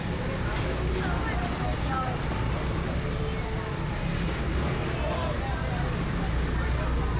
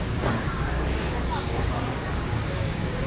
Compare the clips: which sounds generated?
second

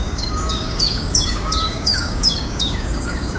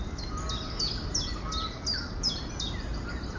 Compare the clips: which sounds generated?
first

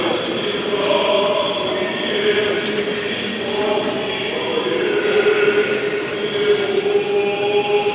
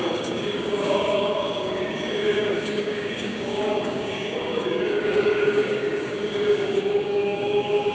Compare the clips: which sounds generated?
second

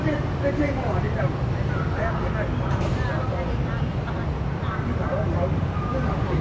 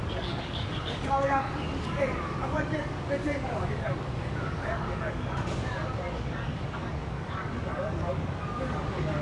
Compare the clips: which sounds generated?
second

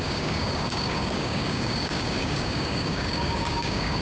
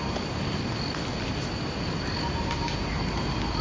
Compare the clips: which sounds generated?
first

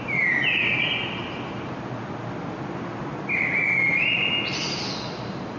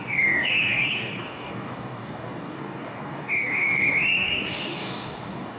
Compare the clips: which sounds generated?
second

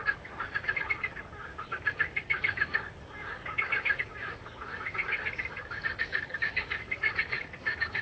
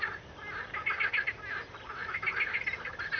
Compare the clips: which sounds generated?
first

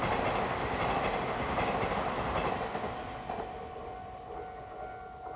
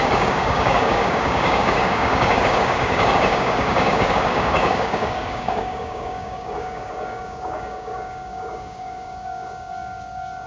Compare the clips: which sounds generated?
second